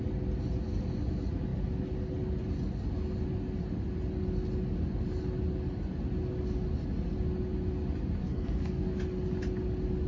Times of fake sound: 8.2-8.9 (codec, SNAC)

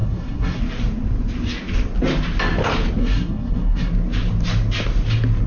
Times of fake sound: 0.0-0.6 (codec, SNAC); 3.0-3.9

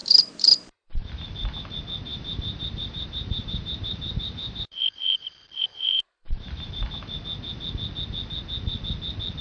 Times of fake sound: 0.0-1.1 (vocoder, BigVGAN v2); 2.1-6.7

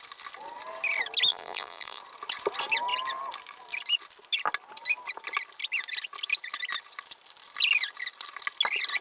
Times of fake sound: 1.3-2.0 (vocoder, BigVGAN v2)

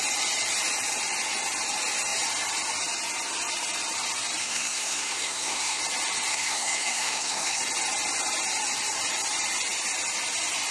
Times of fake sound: 4.4-5.8 (codec, SNAC); 6.3-7.6